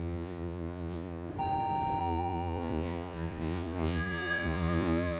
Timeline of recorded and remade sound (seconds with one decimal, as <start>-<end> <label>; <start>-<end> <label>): 0.0-1.3 remade; 1.3-2.0 recorded; 2.0-5.2 remade

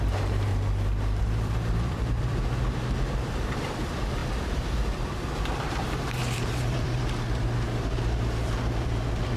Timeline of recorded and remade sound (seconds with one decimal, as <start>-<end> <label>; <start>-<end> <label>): 0.0-0.5 remade; 0.5-1.2 recorded; 1.2-9.4 remade

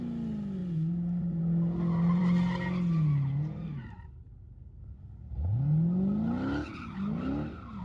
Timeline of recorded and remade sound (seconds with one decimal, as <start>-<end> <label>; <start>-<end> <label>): 0.0-0.6 recorded; 0.6-1.4 remade; 1.4-7.8 recorded

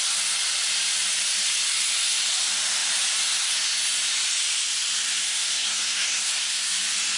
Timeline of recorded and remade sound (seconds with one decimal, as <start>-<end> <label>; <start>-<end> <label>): 0.0-5.2 recorded; 5.2-6.8 remade; 6.8-7.2 recorded

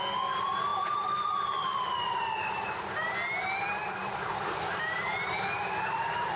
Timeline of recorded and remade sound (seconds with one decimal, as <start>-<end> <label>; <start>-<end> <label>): 0.0-6.4 recorded

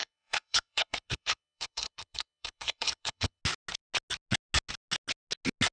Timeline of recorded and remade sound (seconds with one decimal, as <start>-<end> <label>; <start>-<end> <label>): 0.0-3.4 remade; 3.4-5.7 recorded